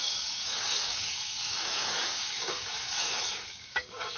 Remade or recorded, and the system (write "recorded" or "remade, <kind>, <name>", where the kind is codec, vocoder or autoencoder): remade, codec, DAC